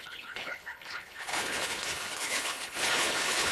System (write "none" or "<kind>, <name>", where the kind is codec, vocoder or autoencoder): codec, HILCodec